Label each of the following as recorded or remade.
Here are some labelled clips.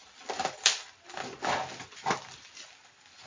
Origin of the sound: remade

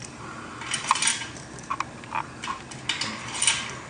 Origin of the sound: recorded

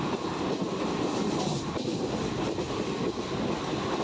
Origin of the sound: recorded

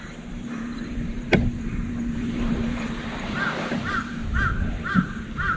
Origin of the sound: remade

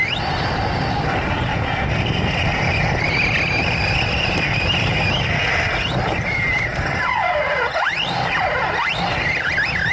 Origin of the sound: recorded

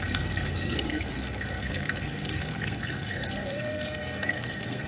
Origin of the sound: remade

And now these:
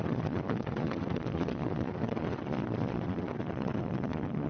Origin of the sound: remade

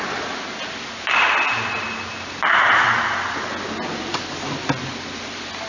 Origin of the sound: recorded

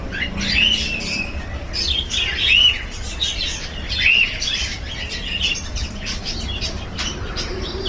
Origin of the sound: recorded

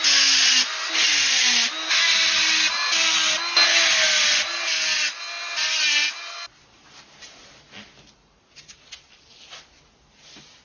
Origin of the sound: recorded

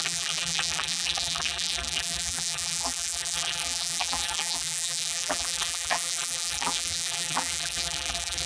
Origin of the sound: remade